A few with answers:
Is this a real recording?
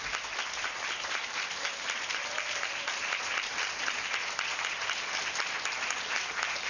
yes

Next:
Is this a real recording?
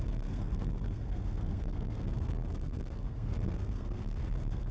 no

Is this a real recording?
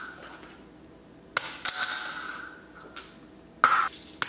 yes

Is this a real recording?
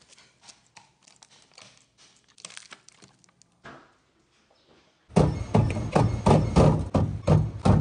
yes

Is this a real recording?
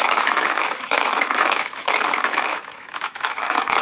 no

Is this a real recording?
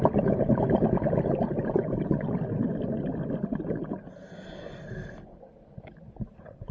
yes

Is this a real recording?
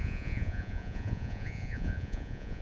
no